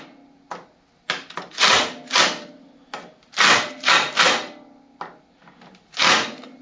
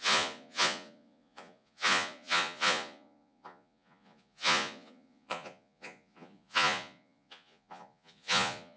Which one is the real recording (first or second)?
first